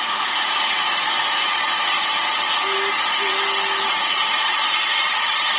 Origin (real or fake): real